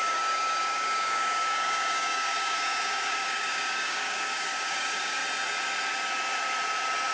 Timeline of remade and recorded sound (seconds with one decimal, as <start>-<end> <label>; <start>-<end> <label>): 0.0-5.2 remade; 5.2-7.1 recorded